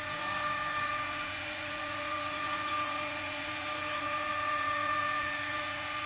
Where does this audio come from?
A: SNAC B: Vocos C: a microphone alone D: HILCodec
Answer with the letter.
B